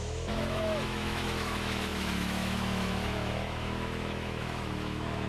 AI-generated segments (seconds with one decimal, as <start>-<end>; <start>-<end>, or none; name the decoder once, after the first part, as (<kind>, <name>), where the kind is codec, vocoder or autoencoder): 0.0-5.3 (autoencoder, DAC-VAE)